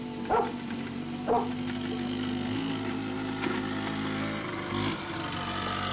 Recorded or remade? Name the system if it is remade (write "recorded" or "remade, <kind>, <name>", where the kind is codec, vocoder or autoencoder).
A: recorded